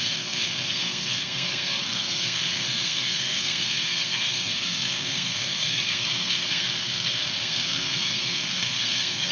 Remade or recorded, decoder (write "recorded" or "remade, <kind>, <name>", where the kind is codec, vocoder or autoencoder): remade, codec, SNAC